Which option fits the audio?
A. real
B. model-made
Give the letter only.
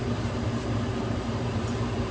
B